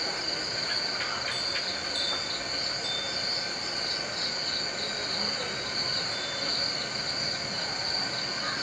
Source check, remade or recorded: recorded